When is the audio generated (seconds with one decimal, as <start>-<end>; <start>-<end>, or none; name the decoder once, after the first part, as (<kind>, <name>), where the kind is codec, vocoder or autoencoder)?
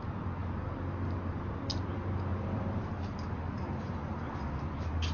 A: 2.3-2.9 (vocoder, BigVGAN v2)